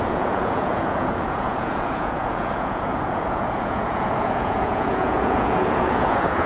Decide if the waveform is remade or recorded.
remade